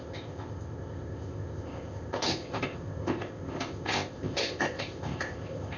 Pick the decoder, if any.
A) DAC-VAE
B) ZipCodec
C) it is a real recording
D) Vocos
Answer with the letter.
B